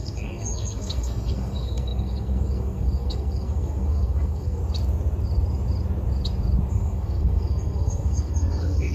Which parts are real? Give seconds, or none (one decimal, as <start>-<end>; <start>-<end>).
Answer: 4.6-6.7